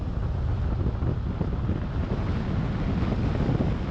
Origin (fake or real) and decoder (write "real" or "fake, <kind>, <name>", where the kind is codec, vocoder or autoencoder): real